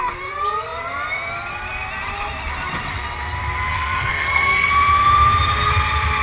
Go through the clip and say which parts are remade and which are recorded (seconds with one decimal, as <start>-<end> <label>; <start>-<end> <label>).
0.0-3.7 recorded; 3.7-4.7 remade; 4.7-6.2 recorded